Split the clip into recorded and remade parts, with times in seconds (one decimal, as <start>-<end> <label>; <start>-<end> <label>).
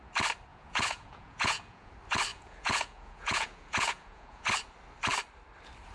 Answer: 0.0-0.5 recorded; 0.5-1.9 remade; 1.9-2.3 recorded; 2.3-4.5 remade; 4.5-5.9 recorded